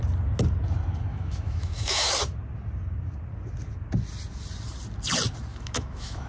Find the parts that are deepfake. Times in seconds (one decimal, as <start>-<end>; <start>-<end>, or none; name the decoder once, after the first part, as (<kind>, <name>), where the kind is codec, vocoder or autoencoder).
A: 1.1-2.1 (autoencoder, DAC-VAE); 5.5-6.3